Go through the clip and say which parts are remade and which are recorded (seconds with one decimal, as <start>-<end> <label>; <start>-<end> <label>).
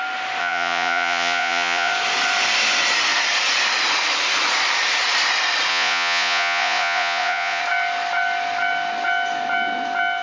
0.0-0.4 recorded; 0.4-1.9 remade; 1.9-5.7 recorded; 5.7-7.6 remade; 7.6-10.2 recorded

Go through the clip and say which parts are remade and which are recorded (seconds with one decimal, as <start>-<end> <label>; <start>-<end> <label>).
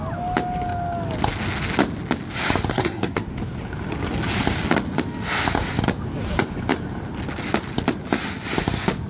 0.0-2.7 recorded; 2.7-3.3 remade; 3.3-9.1 recorded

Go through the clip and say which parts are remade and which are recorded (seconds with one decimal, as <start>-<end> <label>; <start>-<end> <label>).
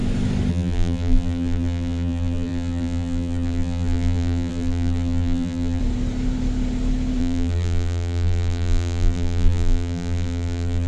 0.0-0.5 recorded; 0.5-5.8 remade; 5.8-7.2 recorded; 7.2-10.9 remade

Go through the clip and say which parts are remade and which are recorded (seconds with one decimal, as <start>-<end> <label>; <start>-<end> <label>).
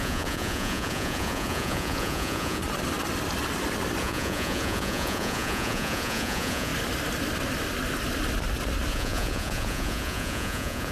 0.0-2.6 remade; 2.6-4.0 recorded; 4.0-6.7 remade; 6.7-8.9 recorded; 8.9-10.9 remade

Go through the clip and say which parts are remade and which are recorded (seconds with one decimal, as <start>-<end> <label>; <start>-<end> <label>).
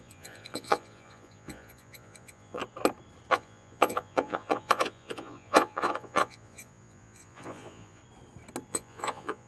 0.0-2.6 remade; 2.6-3.3 recorded; 3.3-8.0 remade; 8.0-8.7 recorded; 8.7-9.5 remade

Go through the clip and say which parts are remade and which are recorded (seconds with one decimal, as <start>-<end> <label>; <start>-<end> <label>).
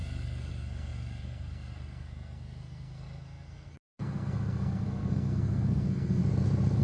0.0-6.2 remade; 6.2-6.8 recorded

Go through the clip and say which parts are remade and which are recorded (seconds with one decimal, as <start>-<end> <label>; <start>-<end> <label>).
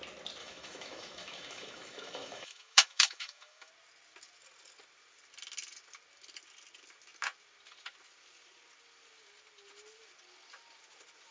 0.0-0.4 recorded; 0.4-3.7 remade; 3.7-11.3 recorded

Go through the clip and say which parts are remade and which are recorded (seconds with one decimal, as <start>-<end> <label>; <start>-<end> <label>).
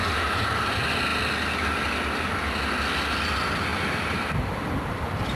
0.0-0.7 remade; 0.7-3.7 recorded; 3.7-4.4 remade; 4.4-5.4 recorded